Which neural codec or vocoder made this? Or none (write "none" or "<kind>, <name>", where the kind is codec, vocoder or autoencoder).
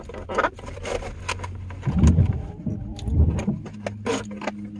none